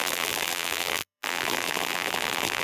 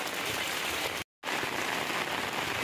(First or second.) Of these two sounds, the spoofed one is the first